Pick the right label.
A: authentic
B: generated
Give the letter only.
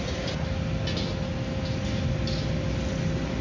A